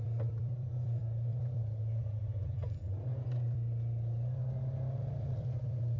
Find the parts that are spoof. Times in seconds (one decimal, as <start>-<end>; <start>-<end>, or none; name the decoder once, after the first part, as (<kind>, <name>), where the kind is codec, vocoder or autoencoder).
0.0-3.1 (vocoder, BigVGAN v2); 5.2-6.0